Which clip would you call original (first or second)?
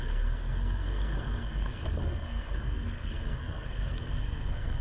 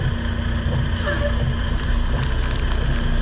second